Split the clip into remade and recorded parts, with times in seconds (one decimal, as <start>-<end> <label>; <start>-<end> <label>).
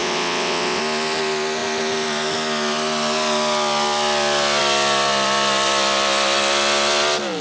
0.0-0.8 remade; 0.8-7.4 recorded